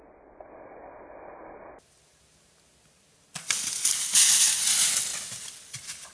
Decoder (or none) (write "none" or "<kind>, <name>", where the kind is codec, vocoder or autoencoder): none